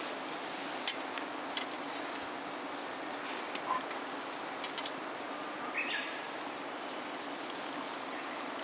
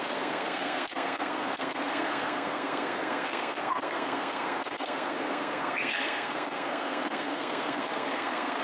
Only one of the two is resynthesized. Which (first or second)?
second